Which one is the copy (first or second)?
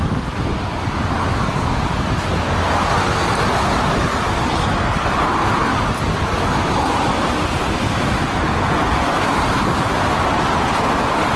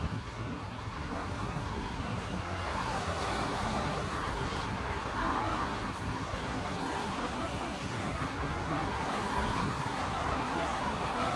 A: second